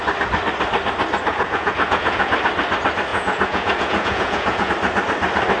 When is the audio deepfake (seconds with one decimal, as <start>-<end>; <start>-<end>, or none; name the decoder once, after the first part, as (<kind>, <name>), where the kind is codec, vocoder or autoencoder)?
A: 1.3-2.3 (vocoder, Vocos); 3.1-4.7

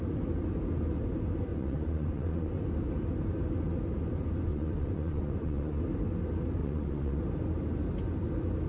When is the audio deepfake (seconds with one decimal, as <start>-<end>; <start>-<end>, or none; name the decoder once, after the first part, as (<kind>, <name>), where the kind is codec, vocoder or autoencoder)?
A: 1.5-2.5 (vocoder, Vocos); 4.5-5.8; 6.6-7.2

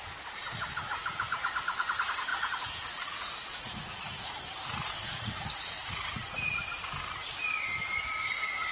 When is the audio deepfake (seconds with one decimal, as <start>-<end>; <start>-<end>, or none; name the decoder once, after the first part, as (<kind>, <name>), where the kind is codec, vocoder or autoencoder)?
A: 2.3-4.3 (vocoder, Vocos); 5.0-6.5

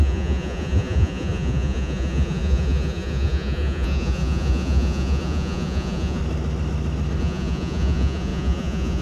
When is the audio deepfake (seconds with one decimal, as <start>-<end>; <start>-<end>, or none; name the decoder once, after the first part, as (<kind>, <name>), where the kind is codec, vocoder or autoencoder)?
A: 0.0-6.2 (vocoder, Vocos); 7.2-9.0

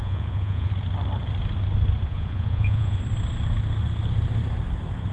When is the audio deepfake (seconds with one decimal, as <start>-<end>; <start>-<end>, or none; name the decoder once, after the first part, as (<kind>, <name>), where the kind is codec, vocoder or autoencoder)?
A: 0.0-0.7 (vocoder, Vocos); 2.1-3.0

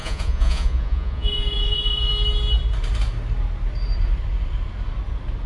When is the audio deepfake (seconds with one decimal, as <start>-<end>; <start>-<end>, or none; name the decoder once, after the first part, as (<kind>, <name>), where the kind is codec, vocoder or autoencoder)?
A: 0.0-2.1 (vocoder, Vocos)